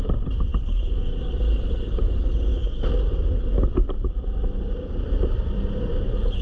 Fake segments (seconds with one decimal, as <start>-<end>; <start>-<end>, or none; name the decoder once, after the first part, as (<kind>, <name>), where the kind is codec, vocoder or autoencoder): 0.0-0.5 (vocoder, BigVGAN v2); 1.2-2.6; 4.0-6.4